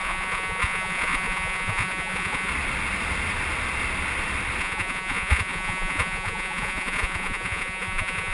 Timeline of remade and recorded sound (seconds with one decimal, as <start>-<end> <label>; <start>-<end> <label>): 0.0-2.5 remade; 2.5-4.6 recorded; 4.6-8.3 remade

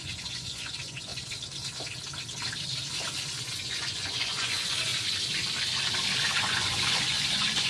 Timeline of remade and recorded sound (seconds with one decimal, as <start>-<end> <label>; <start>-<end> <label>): 0.0-1.1 remade; 1.1-3.4 recorded; 3.4-4.9 remade; 4.9-6.4 recorded; 6.4-7.7 remade

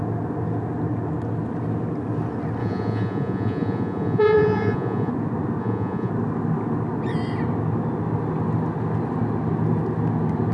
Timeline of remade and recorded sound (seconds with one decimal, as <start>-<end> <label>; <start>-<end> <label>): 0.0-2.6 recorded; 2.6-5.1 remade; 5.1-5.6 recorded; 5.6-6.1 remade; 6.1-10.5 recorded

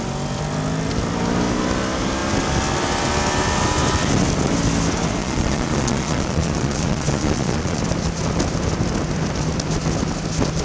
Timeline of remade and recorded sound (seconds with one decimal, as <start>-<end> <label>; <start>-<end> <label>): 0.0-5.2 recorded; 5.2-7.8 remade; 7.8-10.6 recorded